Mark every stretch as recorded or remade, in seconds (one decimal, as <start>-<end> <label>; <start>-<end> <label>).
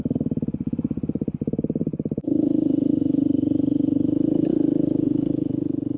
0.0-5.0 recorded; 5.0-5.5 remade; 5.5-6.0 recorded